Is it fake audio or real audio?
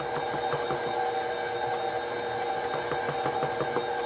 real